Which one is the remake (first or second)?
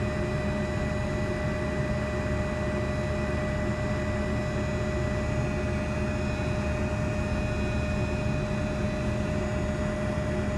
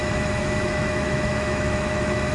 second